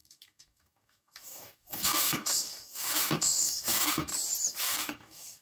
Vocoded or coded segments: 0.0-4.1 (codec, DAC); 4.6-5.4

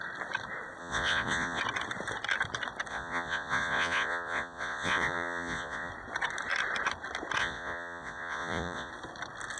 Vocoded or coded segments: 0.8-1.6 (vocoder, Vocos); 2.9-5.9; 7.4-8.9

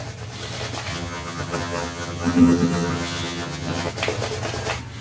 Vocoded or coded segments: 0.9-3.9 (vocoder, HiFi-GAN)

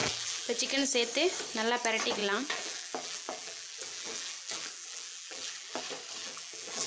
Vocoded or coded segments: 0.0-0.6 (vocoder, BigVGAN v2); 2.2-5.8; 6.2-6.9

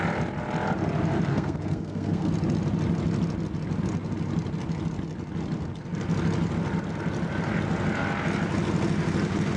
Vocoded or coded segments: 1.3-2.3 (codec, SNAC)

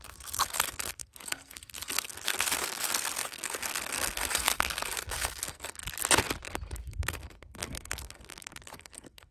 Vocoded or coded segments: 0.0-5.8 (codec, SNAC); 6.4-9.3